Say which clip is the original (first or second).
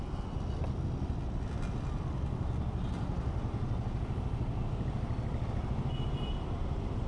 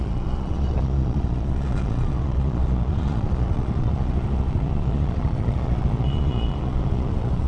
first